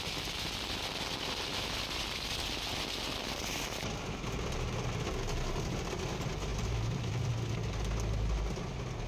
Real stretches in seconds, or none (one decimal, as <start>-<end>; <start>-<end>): 0.0-6.5; 7.3-9.1